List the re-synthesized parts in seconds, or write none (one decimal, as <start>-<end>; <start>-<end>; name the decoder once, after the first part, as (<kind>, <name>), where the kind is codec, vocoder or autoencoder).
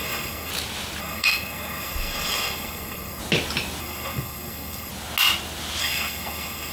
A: 0.0-0.5 (codec, SNAC); 1.0-3.2; 3.8-4.9; 5.8-6.7